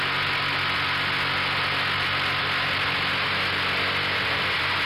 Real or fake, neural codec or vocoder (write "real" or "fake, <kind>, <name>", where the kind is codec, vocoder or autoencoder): real